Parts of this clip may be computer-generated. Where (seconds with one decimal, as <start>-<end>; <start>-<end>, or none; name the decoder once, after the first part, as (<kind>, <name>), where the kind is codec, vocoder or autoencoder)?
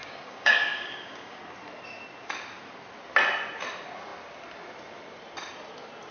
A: 0.0-1.4 (codec, DAC)